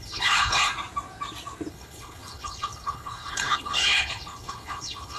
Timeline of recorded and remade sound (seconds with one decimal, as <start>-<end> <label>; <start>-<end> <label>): 0.0-0.7 remade; 0.7-1.7 recorded; 1.7-5.2 remade